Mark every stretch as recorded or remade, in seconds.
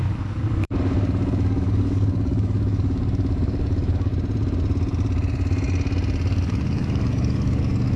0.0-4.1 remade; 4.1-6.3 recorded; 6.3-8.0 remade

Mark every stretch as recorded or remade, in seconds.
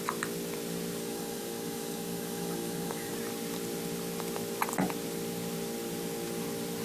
0.0-1.0 recorded; 1.0-3.1 remade; 3.1-6.8 recorded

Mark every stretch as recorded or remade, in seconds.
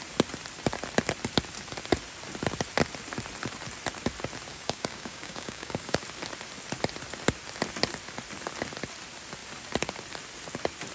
0.0-4.5 recorded; 4.5-6.0 remade; 6.0-10.9 recorded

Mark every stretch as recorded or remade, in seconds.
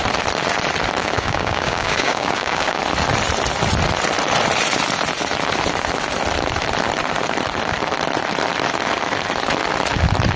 0.0-1.0 recorded; 1.0-2.8 remade; 2.8-10.4 recorded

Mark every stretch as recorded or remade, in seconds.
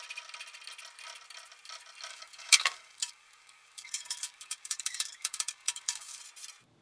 0.0-2.1 recorded; 2.1-6.2 remade; 6.2-6.8 recorded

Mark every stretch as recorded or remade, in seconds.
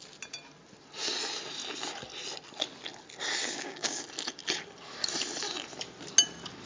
0.0-3.4 recorded; 3.4-4.0 remade; 4.0-6.7 recorded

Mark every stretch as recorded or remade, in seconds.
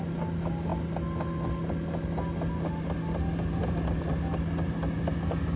0.0-5.6 recorded